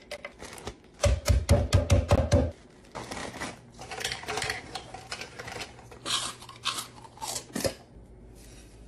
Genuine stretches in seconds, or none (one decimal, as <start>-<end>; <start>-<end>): 0.0-3.2; 7.5-8.9